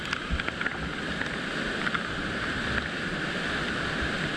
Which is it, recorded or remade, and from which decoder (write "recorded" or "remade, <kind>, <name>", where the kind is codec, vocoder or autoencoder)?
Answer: recorded